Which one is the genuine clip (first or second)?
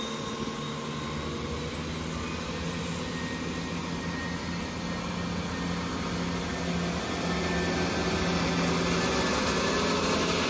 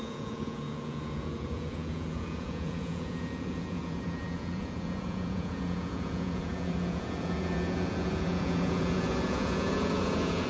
first